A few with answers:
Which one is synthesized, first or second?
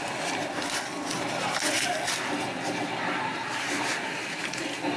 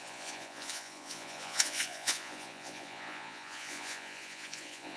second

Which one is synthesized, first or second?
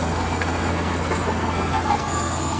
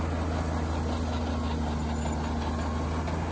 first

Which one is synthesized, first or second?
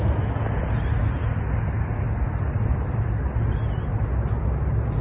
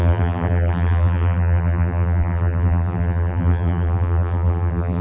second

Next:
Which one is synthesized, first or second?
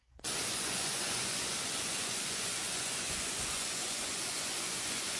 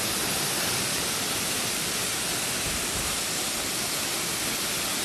first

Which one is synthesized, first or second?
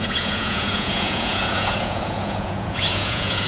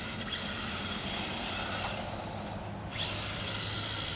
first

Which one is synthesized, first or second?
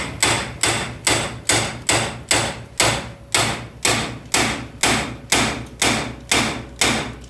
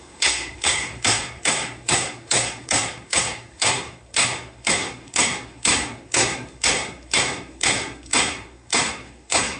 second